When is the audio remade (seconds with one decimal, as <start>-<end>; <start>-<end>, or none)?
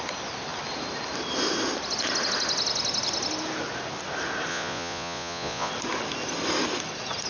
4.5-5.7